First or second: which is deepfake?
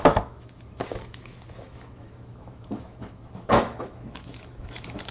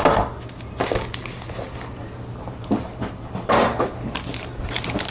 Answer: first